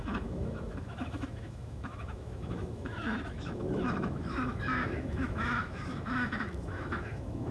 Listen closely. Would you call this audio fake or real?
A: fake